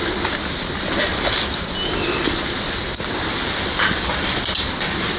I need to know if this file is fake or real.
real